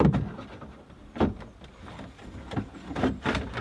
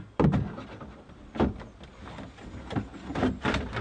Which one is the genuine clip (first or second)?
second